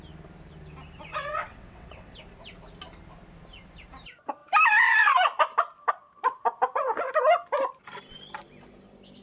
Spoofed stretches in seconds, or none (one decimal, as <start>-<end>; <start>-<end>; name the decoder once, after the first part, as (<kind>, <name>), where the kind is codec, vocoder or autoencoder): 1.1-2.2 (vocoder, WaveNeXt)